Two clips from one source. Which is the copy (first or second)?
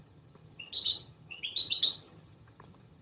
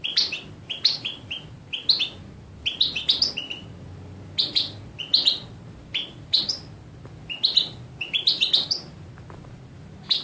first